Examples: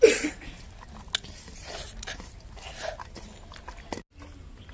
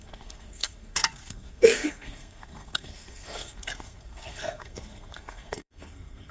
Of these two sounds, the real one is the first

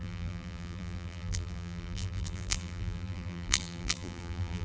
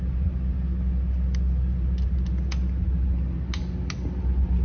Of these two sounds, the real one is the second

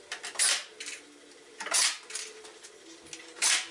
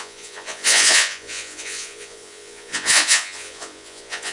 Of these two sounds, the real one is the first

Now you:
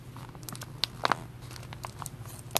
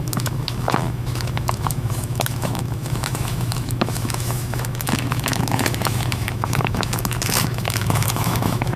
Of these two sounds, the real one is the first